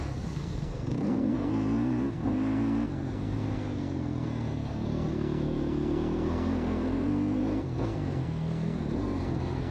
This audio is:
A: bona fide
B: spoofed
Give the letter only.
B